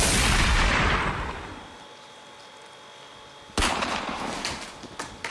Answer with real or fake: real